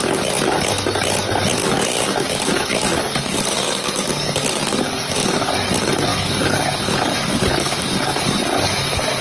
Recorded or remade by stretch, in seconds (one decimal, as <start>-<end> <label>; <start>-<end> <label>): 0.0-1.6 recorded; 1.6-5.5 remade; 5.5-6.1 recorded; 6.1-9.2 remade